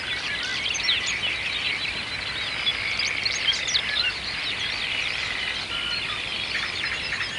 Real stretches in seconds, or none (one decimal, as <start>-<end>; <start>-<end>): 0.0-7.4